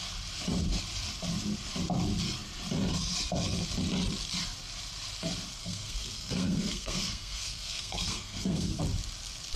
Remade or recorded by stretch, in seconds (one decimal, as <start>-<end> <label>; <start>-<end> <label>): 0.0-5.6 recorded; 5.6-8.8 remade; 8.8-9.6 recorded